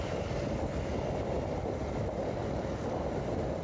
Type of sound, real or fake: real